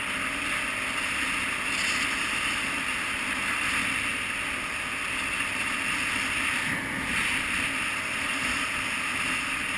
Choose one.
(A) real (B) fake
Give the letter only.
A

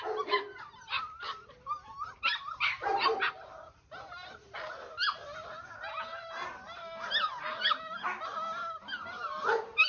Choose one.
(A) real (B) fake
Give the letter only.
A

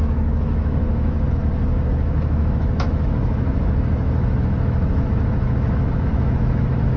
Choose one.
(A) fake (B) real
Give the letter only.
A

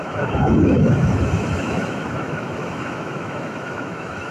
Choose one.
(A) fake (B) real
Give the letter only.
A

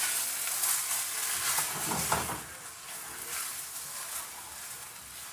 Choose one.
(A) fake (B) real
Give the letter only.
B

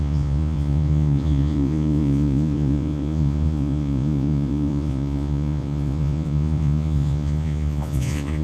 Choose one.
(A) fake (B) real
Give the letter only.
A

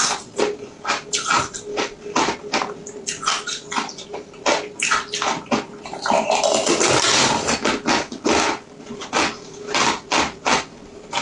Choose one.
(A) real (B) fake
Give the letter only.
A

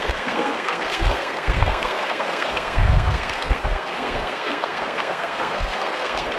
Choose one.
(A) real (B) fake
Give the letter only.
B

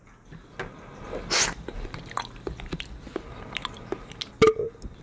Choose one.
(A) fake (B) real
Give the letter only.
B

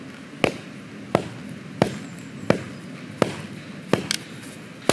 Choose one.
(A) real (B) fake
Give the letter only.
A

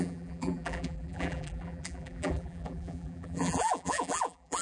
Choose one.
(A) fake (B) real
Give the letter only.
A